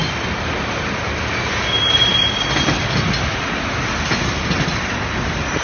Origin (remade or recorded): recorded